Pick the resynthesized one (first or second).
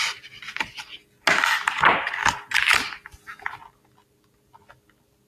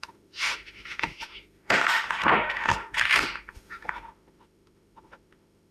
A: second